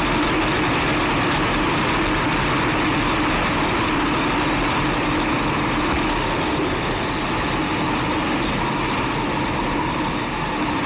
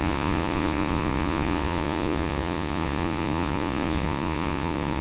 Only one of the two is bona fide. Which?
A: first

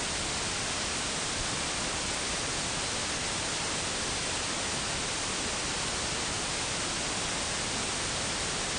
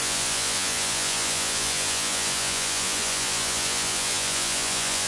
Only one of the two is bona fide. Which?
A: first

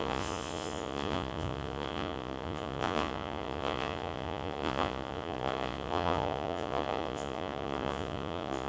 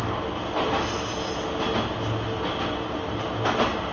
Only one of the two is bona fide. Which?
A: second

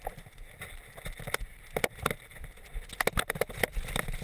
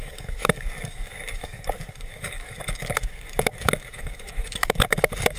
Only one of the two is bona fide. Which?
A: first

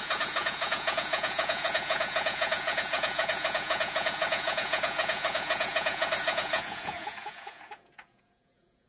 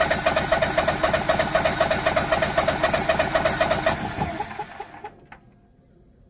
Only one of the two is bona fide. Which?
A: second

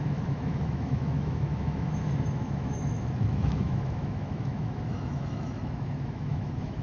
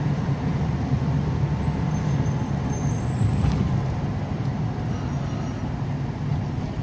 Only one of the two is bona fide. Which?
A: second